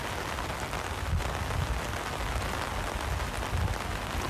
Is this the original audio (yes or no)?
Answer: yes